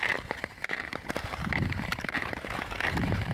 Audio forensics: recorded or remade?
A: remade